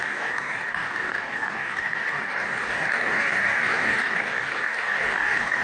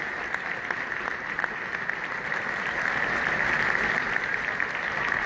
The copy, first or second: first